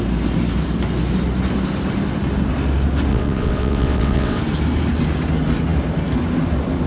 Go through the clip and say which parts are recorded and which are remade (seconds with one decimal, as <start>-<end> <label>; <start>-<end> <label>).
0.0-3.1 recorded; 3.1-4.4 remade; 4.4-6.9 recorded